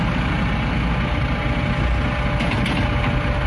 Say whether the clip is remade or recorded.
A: recorded